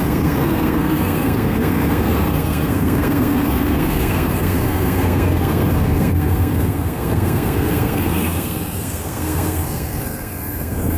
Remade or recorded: remade